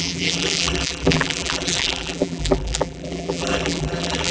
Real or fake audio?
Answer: fake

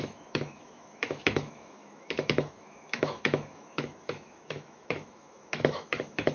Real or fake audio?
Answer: fake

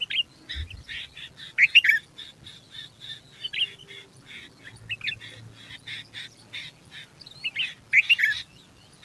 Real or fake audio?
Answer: real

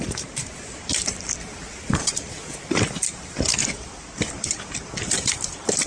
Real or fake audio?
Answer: fake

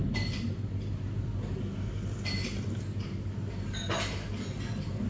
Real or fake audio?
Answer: real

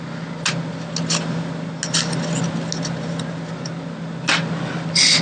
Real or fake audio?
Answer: real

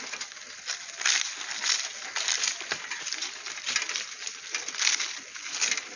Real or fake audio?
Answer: real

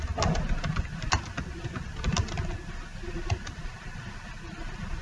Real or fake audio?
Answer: real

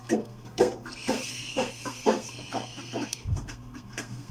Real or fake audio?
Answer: fake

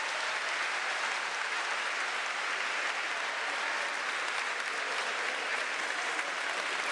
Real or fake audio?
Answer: real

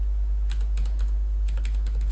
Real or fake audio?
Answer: real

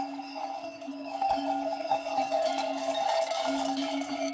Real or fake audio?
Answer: fake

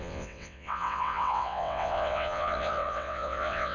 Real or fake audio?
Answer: fake